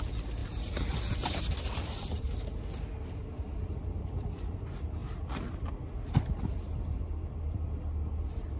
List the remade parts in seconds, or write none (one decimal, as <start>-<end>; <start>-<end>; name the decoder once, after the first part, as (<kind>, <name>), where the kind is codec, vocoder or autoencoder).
0.4-2.1 (vocoder, BigVGAN v2)